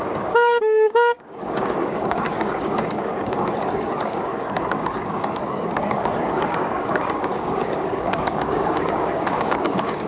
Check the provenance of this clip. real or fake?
fake